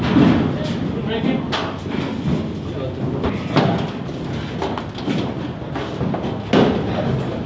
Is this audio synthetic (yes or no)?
no